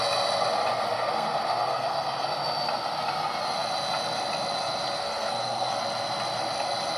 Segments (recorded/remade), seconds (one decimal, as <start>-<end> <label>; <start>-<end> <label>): 0.0-0.9 recorded; 0.9-2.3 remade; 2.3-5.0 recorded; 5.0-5.8 remade; 5.8-7.0 recorded